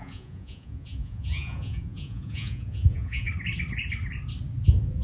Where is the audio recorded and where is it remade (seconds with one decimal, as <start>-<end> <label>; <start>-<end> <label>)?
0.0-3.3 remade; 3.3-4.6 recorded; 4.6-5.0 remade